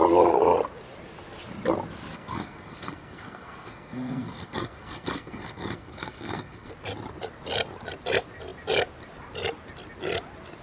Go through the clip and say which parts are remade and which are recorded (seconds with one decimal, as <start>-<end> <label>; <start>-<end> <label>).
0.0-2.1 recorded; 2.1-6.7 remade; 6.7-10.6 recorded